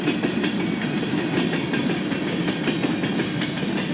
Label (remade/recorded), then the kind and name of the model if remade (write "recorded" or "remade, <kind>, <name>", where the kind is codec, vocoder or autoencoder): recorded